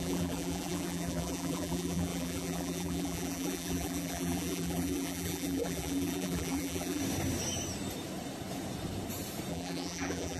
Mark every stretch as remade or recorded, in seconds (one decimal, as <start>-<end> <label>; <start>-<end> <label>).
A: 0.0-7.0 remade; 7.0-9.5 recorded; 9.5-10.4 remade